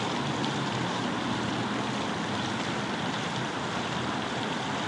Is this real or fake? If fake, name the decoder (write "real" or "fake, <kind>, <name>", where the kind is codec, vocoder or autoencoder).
real